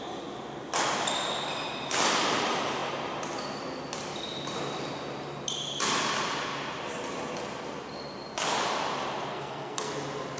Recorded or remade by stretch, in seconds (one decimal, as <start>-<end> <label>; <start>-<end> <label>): 0.0-9.3 recorded; 9.3-9.9 remade; 9.9-10.4 recorded